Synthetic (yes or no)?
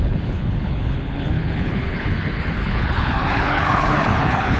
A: yes